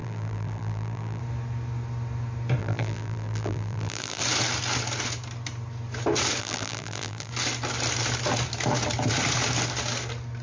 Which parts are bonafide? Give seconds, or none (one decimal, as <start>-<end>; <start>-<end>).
1.2-2.6; 4.2-6.4; 7.3-10.4